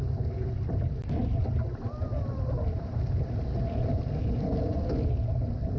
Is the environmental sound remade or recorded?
recorded